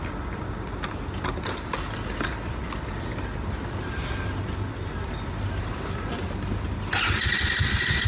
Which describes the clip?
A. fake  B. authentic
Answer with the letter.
B